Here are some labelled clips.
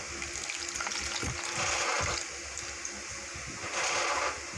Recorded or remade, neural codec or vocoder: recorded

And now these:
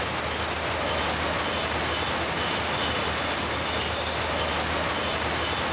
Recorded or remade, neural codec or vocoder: recorded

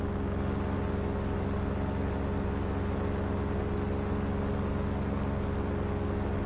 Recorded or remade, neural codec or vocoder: recorded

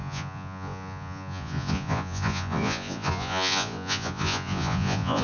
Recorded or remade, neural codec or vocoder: remade, vocoder, Vocos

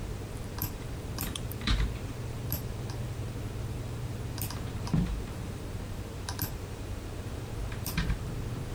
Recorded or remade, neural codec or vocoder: remade, vocoder, BigVGAN v2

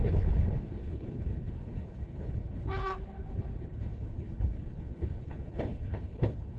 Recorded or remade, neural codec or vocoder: remade, codec, HILCodec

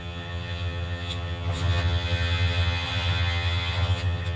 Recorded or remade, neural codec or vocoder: remade, vocoder, HiFi-GAN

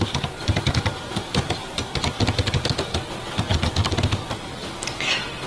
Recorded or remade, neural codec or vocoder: recorded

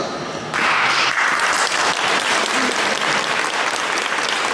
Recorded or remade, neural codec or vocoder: recorded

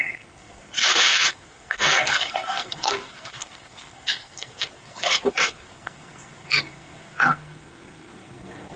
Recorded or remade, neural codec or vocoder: remade, codec, SNAC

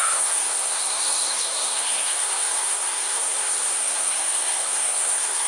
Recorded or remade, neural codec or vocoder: remade, codec, SNAC